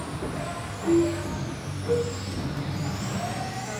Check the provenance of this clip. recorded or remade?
recorded